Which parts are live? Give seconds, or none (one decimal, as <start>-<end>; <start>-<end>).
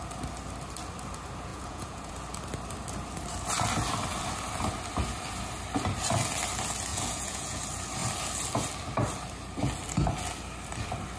0.0-1.5; 2.1-6.9; 7.6-11.2